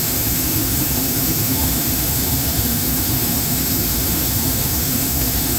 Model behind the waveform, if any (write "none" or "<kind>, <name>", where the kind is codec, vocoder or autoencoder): autoencoder, DAC-VAE